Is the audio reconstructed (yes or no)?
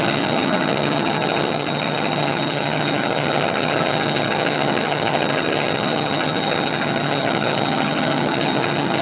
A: yes